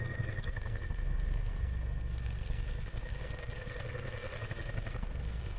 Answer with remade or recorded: remade